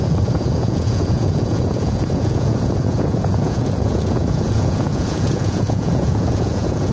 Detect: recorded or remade remade